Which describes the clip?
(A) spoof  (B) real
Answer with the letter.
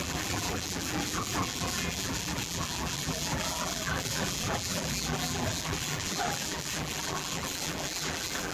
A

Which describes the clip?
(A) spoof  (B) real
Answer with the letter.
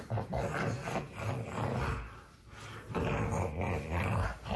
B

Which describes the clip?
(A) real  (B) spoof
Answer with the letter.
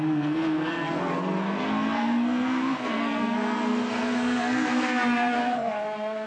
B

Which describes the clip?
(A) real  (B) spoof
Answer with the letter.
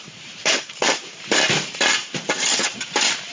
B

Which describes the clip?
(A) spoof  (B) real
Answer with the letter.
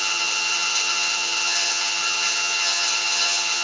A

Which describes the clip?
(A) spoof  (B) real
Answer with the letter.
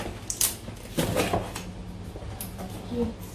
B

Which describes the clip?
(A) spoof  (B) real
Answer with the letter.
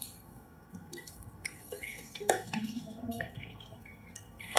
A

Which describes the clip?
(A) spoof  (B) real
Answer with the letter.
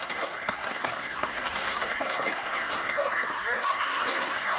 A